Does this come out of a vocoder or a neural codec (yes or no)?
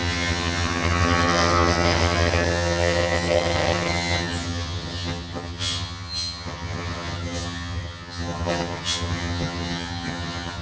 yes